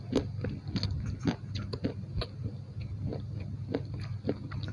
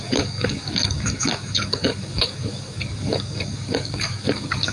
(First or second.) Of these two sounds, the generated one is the second